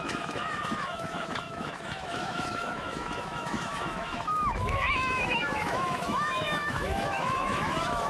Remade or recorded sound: remade